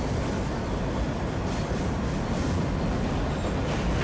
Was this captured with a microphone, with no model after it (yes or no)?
yes